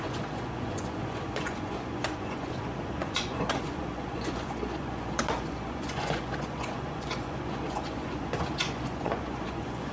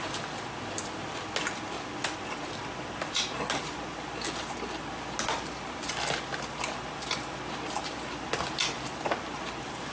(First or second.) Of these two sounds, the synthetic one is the first